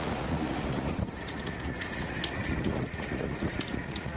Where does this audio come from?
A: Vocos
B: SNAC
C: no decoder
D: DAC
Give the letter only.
A